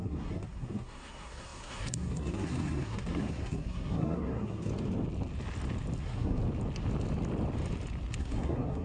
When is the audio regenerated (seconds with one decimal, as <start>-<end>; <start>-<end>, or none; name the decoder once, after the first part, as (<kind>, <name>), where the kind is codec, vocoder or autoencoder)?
0.0-4.7 (codec, SNAC); 6.0-6.4; 8.2-8.8